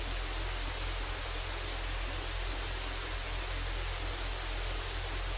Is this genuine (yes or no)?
yes